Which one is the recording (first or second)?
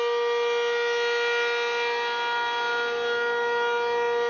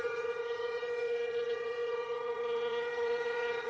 first